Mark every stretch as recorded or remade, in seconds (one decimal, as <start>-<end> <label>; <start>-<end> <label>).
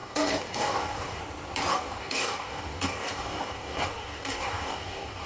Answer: 0.0-1.2 remade; 1.2-1.7 recorded; 1.7-5.3 remade